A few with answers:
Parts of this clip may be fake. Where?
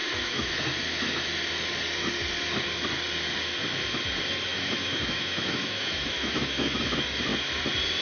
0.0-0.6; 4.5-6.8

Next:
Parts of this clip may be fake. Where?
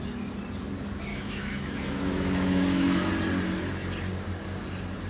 1.1-3.1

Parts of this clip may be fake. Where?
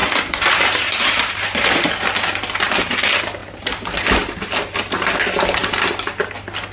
none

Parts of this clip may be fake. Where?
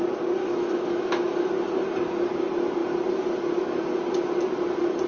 0.4-1.5